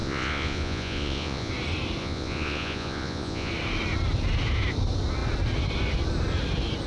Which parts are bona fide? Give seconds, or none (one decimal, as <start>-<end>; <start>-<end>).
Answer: 1.5-2.0; 3.5-6.9